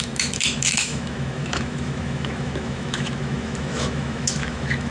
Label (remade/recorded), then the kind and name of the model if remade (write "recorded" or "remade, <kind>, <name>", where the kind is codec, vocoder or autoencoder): remade, autoencoder, DAC-VAE